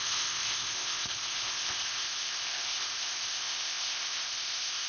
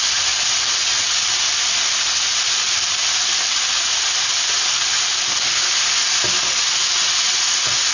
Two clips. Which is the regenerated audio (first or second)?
first